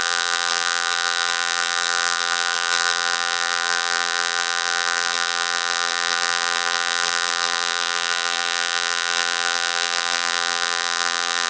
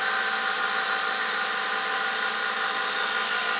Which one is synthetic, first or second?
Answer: first